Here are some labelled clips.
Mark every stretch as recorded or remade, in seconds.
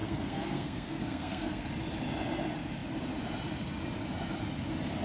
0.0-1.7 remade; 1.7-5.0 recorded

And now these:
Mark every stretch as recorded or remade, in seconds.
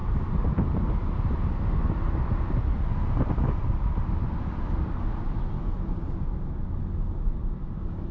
0.0-8.1 recorded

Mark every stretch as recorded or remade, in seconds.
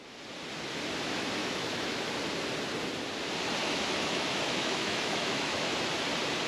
0.0-1.4 recorded; 1.4-2.1 remade; 2.1-3.6 recorded; 3.6-5.7 remade; 5.7-6.5 recorded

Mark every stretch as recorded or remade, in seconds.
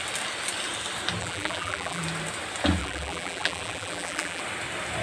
0.0-1.2 recorded; 1.2-2.0 remade; 2.0-2.8 recorded; 2.8-4.4 remade; 4.4-5.0 recorded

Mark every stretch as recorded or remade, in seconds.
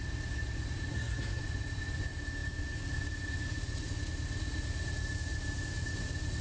0.0-0.9 recorded; 0.9-1.4 remade; 1.4-6.4 recorded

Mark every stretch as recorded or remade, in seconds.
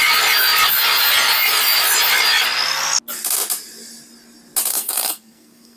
0.0-4.7 recorded; 4.7-5.8 remade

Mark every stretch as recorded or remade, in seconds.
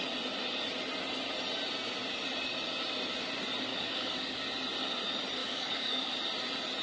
0.0-3.7 recorded; 3.7-4.4 remade; 4.4-5.4 recorded; 5.4-6.1 remade; 6.1-6.8 recorded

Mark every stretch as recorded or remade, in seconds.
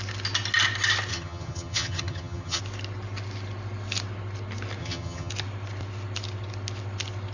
0.0-1.1 recorded; 1.1-2.6 remade; 2.6-4.8 recorded; 4.8-5.3 remade; 5.3-7.3 recorded